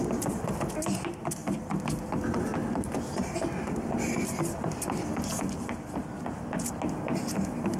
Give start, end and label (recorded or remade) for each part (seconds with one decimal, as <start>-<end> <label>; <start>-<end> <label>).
0.0-7.8 recorded